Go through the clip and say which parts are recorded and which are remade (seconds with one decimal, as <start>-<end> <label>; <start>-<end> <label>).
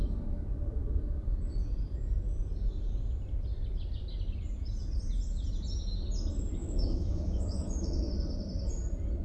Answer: 0.0-6.6 recorded; 6.6-8.1 remade; 8.1-9.2 recorded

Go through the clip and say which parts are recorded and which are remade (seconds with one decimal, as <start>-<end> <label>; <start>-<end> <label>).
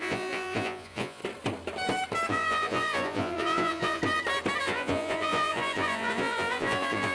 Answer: 0.0-1.2 remade; 1.2-2.3 recorded; 2.3-4.0 remade; 4.0-4.6 recorded; 4.6-7.1 remade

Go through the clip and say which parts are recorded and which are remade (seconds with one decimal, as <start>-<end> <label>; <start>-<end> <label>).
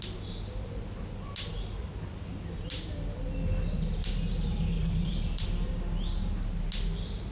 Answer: 0.0-4.8 recorded; 4.8-5.7 remade; 5.7-7.3 recorded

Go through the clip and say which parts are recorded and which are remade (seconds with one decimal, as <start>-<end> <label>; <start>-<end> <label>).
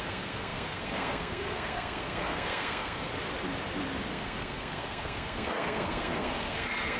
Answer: 0.0-3.1 remade; 3.1-4.1 recorded; 4.1-7.0 remade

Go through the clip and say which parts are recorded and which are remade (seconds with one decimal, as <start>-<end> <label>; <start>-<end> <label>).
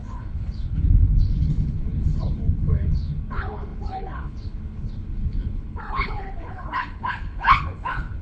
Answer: 0.0-8.2 remade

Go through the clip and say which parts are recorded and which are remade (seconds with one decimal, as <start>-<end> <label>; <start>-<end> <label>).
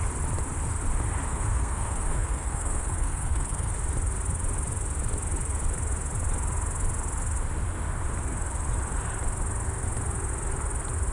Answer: 0.0-1.3 recorded; 1.3-3.7 remade; 3.7-11.1 recorded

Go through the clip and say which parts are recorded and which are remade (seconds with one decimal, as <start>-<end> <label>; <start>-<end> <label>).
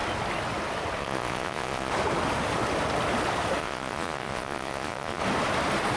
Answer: 0.0-1.0 recorded; 1.0-1.9 remade; 1.9-3.6 recorded; 3.6-5.2 remade; 5.2-6.0 recorded